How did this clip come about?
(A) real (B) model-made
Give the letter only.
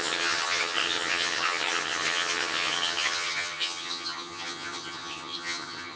B